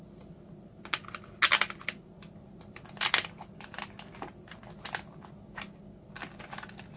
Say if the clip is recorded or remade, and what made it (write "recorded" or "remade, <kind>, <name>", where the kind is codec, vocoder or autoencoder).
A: recorded